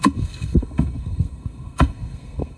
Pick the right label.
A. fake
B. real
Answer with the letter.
A